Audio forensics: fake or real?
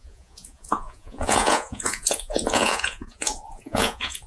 fake